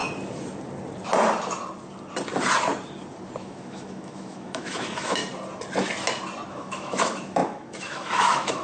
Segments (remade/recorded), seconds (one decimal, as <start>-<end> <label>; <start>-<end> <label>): 0.0-3.4 recorded; 3.4-5.2 remade; 5.2-6.5 recorded; 6.5-8.6 remade